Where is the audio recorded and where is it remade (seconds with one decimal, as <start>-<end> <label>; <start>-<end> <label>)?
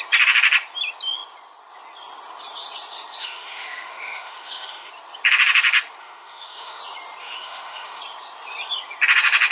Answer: 0.0-3.2 recorded; 3.2-4.9 remade; 4.9-6.0 recorded; 6.0-6.8 remade; 6.8-7.2 recorded; 7.2-8.0 remade; 8.0-9.5 recorded